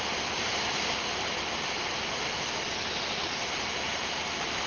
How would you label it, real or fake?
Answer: fake